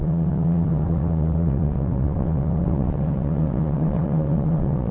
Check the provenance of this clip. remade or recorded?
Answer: remade